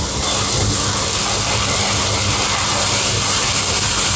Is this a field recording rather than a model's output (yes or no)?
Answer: yes